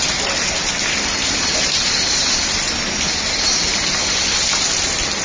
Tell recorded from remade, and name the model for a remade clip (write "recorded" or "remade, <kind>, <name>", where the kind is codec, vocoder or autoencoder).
recorded